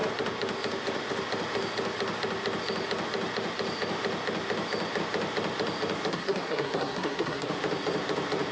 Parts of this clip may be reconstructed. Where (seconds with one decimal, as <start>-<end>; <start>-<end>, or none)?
6.1-7.5